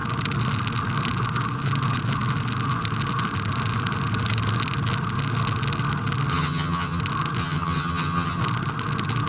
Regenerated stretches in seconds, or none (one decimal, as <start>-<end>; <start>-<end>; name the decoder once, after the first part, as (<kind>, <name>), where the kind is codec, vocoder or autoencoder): 6.3-7.0 (vocoder, HiFi-GAN); 7.4-8.4